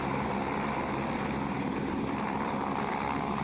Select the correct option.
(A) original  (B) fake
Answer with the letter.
A